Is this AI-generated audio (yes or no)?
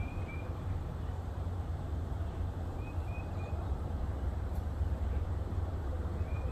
yes